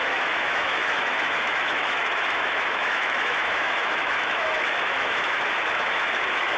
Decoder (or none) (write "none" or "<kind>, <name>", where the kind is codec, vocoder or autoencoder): autoencoder, DAC-VAE